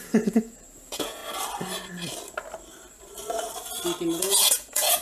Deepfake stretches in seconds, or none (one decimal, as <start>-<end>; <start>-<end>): 0.0-1.2; 4.2-5.0